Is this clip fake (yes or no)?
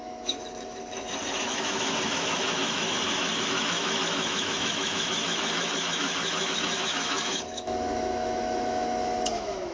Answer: yes